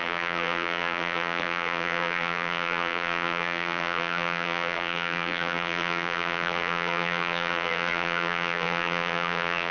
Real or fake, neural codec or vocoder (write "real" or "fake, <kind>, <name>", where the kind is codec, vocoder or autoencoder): fake, vocoder, BigVGAN v2